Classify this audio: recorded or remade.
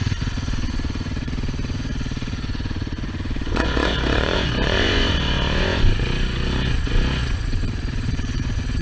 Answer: remade